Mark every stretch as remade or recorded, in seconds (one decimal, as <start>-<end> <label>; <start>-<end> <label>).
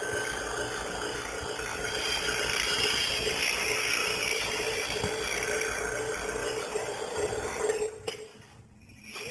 0.0-1.7 recorded; 1.7-3.1 remade; 3.1-4.0 recorded; 4.0-5.0 remade; 5.0-6.4 recorded; 6.4-7.6 remade; 7.6-9.3 recorded